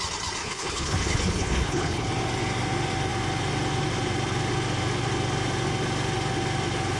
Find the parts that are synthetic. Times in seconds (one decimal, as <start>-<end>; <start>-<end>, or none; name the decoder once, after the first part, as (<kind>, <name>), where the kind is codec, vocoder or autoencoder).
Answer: 0.4-2.1 (codec, HILCodec)